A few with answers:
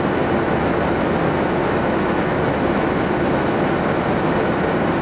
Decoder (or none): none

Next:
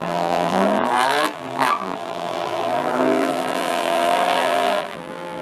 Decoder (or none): vocoder, BigVGAN v2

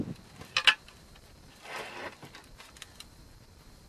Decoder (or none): none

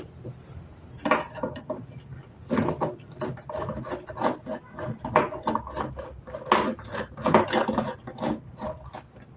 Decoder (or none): none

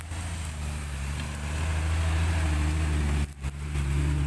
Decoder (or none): none